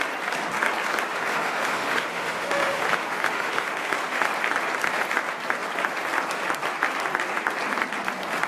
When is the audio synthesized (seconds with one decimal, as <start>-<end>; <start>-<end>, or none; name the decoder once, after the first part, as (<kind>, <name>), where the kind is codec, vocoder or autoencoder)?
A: 1.3-4.3 (autoencoder, DAC-VAE)